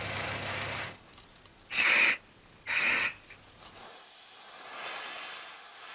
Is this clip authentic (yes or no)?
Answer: yes